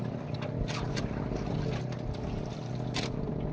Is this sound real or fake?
real